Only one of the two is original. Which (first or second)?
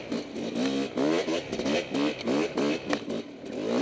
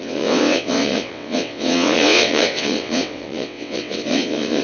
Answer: first